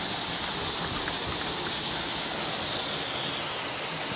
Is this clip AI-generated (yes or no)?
no